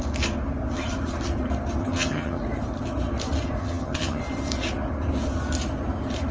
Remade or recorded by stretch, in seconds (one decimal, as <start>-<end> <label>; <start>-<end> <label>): 0.0-1.8 recorded; 1.8-2.4 remade; 2.4-3.6 recorded; 3.6-4.2 remade; 4.2-6.3 recorded